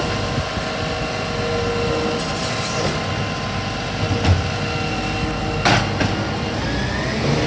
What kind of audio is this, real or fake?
real